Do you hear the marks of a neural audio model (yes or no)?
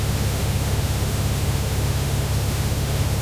yes